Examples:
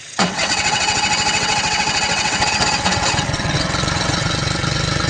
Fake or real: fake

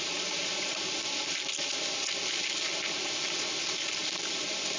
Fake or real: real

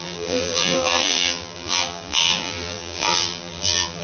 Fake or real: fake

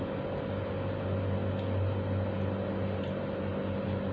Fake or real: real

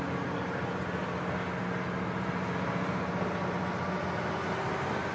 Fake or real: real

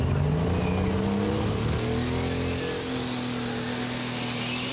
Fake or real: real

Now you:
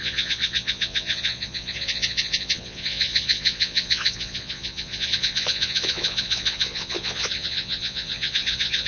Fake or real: fake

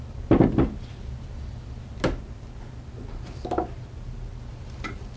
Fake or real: real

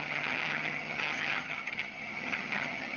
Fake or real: fake